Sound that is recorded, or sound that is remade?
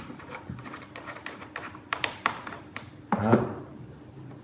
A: remade